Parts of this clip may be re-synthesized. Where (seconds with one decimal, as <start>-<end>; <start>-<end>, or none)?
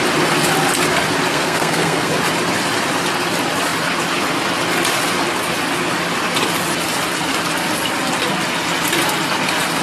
1.3-2.1